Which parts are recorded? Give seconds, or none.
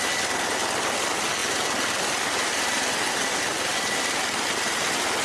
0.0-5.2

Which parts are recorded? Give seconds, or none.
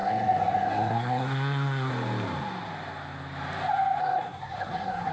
1.9-4.0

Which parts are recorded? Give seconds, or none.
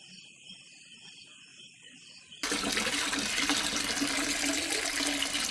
0.0-5.5